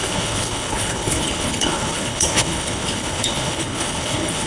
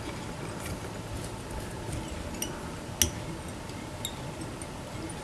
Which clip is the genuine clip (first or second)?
second